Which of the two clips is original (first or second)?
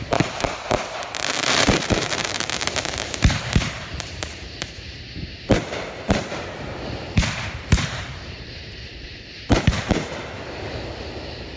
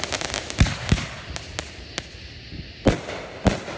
second